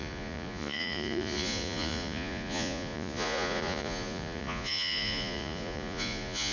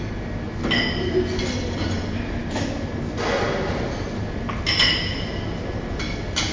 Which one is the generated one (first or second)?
first